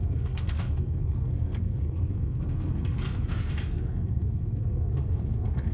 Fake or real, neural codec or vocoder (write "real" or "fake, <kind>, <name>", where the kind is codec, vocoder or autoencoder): fake, codec, SNAC